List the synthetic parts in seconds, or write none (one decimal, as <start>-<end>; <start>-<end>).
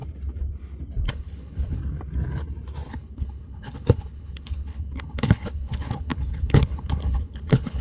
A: 1.1-1.8; 2.9-7.8